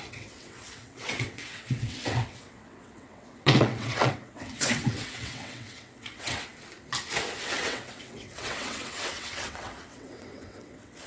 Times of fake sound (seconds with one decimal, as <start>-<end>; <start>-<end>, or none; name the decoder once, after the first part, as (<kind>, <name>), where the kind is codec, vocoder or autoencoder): 0.0-6.5 (vocoder, WaveNeXt); 7.4-11.1